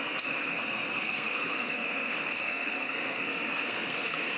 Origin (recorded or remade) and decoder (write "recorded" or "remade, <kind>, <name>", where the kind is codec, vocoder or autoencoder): remade, codec, SNAC